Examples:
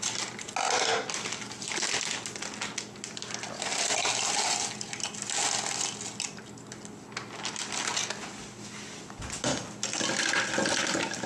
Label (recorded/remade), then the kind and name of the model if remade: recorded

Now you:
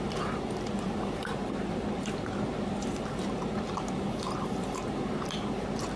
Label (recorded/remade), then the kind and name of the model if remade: remade, vocoder, BigVGAN v2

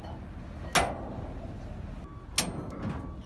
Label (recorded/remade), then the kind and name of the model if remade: recorded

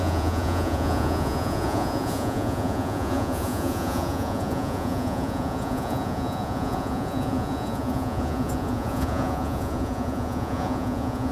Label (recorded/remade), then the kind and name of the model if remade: remade, vocoder, Vocos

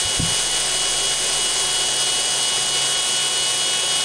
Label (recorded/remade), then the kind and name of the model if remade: recorded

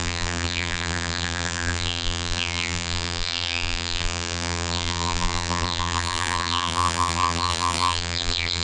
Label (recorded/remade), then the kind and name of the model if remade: remade, vocoder, BigVGAN v2